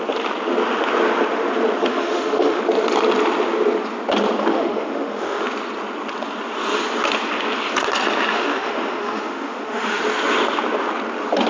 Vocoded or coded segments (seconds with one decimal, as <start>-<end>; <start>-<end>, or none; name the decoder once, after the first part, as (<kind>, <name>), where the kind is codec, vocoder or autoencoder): 1.8-2.6 (autoencoder, DAC-VAE); 4.5-5.4; 8.3-10.0